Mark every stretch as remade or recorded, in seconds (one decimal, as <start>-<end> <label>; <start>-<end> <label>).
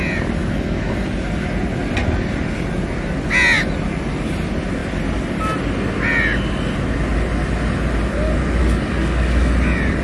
0.0-0.4 recorded; 0.4-0.9 remade; 0.9-8.6 recorded; 8.6-9.5 remade; 9.5-10.0 recorded